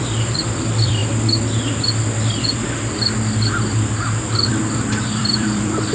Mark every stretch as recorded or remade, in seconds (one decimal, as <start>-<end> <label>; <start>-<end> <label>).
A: 0.0-1.0 remade; 1.0-4.5 recorded; 4.5-5.9 remade